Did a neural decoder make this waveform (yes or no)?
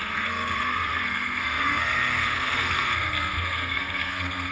yes